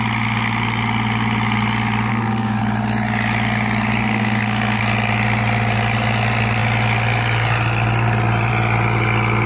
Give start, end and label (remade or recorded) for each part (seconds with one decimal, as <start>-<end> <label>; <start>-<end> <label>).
0.0-2.1 recorded; 2.1-2.6 remade; 2.6-4.0 recorded; 4.0-4.8 remade; 4.8-9.5 recorded